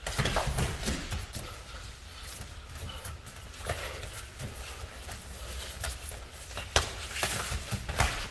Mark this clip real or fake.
fake